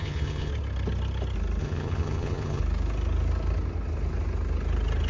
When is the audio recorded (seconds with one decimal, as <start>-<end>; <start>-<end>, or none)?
0.5-1.6; 2.6-5.1